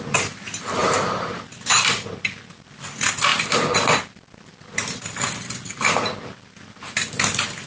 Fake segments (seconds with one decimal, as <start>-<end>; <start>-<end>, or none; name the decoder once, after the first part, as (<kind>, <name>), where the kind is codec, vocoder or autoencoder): 0.8-1.4 (vocoder, BigVGAN v2)